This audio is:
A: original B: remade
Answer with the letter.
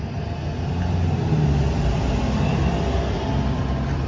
A